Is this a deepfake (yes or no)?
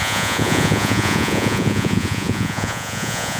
yes